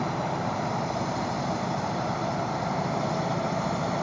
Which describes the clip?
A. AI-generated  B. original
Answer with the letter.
A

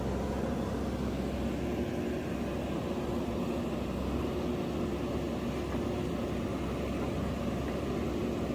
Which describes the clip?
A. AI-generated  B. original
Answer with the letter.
B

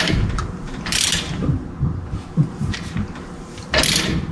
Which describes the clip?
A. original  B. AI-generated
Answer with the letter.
B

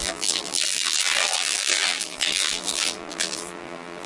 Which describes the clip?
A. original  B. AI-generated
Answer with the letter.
B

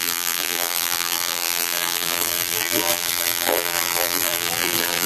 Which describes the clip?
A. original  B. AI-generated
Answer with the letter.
B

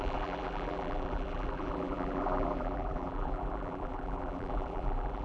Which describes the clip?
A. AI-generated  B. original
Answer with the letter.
A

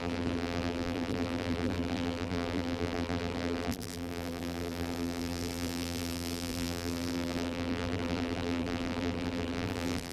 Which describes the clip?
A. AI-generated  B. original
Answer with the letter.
A